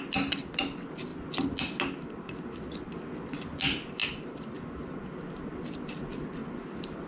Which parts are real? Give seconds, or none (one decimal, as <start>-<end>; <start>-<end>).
0.0-7.1

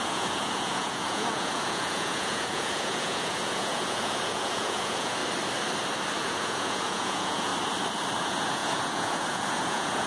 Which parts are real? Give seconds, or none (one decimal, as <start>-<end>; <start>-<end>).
5.2-6.2; 7.5-8.2